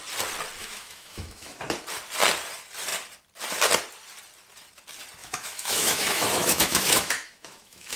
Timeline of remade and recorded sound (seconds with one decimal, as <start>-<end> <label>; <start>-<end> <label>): 0.0-0.6 recorded; 0.6-1.6 remade; 1.6-5.2 recorded; 5.2-8.0 remade